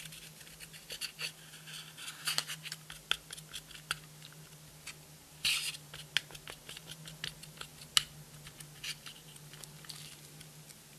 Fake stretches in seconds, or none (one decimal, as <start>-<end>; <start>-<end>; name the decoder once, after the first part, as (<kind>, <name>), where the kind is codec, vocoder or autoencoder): none